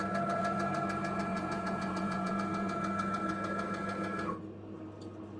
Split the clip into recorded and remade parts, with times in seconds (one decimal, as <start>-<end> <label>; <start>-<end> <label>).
0.0-1.3 recorded; 1.3-2.3 remade; 2.3-5.4 recorded